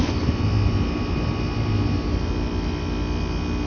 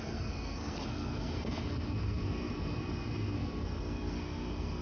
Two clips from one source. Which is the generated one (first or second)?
second